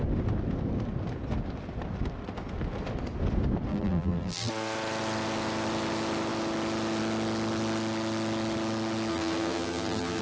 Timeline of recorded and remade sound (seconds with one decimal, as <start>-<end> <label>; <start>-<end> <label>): 0.0-3.7 recorded; 3.7-4.5 remade; 4.5-9.1 recorded; 9.1-10.2 remade